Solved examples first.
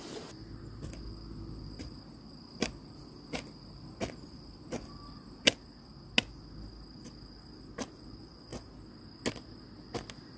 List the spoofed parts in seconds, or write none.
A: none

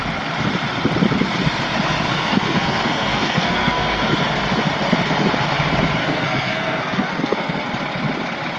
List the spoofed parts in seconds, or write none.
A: 2.1-4.1 (codec, SNAC); 6.0-7.7